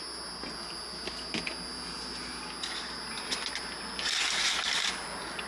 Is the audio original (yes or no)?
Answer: yes